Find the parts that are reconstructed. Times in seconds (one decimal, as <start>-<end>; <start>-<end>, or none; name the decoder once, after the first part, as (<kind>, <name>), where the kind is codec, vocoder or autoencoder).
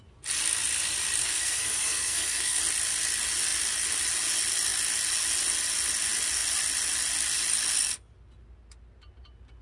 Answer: 1.2-2.6 (codec, SNAC)